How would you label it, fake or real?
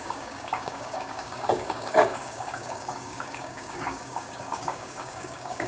fake